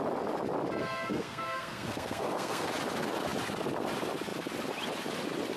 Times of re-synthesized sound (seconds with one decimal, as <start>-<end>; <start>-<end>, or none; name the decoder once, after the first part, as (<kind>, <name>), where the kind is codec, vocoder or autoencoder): 0.8-2.7 (codec, SNAC)